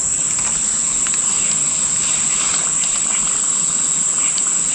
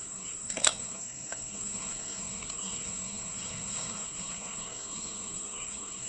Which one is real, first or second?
first